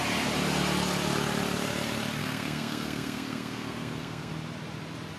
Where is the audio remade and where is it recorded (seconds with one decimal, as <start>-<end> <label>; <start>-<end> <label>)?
0.0-2.2 recorded; 2.2-4.3 remade; 4.3-5.2 recorded